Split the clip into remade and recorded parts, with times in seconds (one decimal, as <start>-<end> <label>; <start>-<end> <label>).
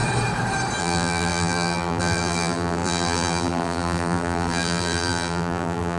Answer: 0.0-0.8 recorded; 0.8-6.0 remade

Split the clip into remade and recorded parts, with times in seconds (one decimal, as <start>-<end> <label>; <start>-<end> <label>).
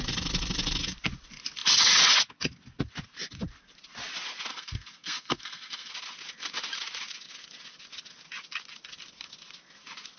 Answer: 0.0-4.5 recorded; 4.5-5.9 remade; 5.9-10.2 recorded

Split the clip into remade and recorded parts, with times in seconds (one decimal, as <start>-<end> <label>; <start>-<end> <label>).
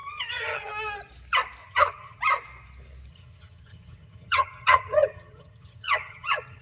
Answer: 0.0-0.7 remade; 0.7-1.6 recorded; 1.6-2.2 remade; 2.2-3.1 recorded; 3.1-6.6 remade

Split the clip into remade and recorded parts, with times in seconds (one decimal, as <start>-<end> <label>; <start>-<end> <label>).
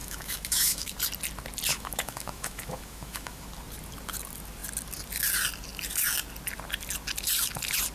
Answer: 0.0-0.9 remade; 0.9-1.7 recorded; 1.7-3.4 remade; 3.4-7.9 recorded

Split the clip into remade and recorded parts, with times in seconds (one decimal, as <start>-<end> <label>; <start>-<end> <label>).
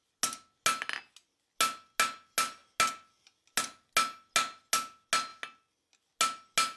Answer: 0.0-6.8 recorded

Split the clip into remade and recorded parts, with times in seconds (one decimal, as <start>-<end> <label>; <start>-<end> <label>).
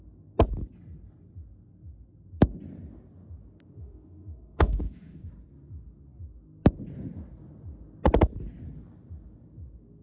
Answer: 0.0-3.8 recorded; 3.8-5.3 remade; 5.3-10.0 recorded